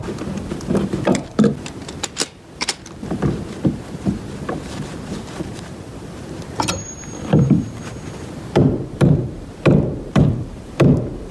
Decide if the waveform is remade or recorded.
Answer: remade